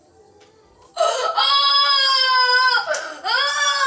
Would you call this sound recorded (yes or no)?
yes